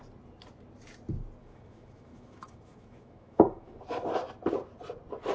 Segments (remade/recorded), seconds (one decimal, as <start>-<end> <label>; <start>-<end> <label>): 0.0-1.4 recorded; 1.4-3.8 remade; 3.8-5.3 recorded